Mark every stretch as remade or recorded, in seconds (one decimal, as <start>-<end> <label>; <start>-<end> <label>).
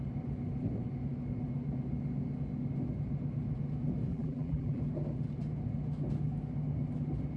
0.0-4.1 recorded; 4.1-4.8 remade; 4.8-7.4 recorded